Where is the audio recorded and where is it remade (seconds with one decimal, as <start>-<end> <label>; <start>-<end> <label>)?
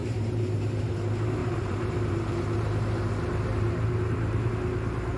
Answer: 0.0-0.9 remade; 0.9-1.4 recorded; 1.4-4.5 remade; 4.5-5.2 recorded